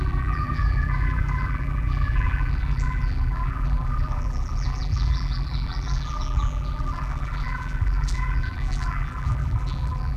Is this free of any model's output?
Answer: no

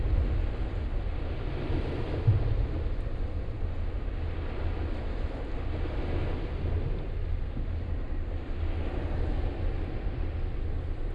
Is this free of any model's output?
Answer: yes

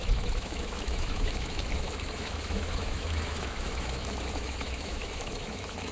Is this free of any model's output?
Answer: no